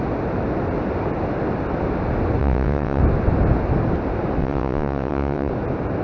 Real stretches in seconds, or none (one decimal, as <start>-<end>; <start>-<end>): 0.0-2.4; 3.0-4.4; 5.5-6.0